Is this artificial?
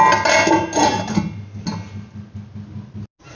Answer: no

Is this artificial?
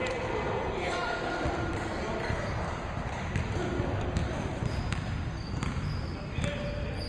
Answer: no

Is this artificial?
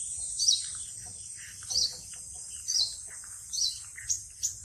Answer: no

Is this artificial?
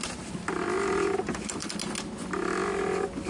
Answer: no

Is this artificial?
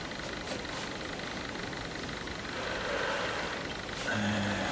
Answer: no